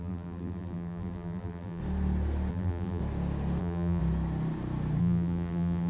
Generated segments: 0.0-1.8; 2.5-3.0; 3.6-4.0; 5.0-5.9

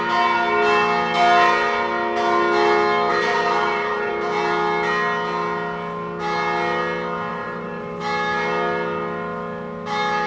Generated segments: 3.1-4.1; 7.3-8.0